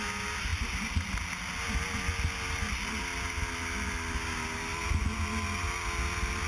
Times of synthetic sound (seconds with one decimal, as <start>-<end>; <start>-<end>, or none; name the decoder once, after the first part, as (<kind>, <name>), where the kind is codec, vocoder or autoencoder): none